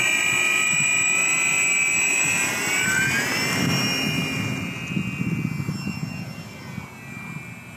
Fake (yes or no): no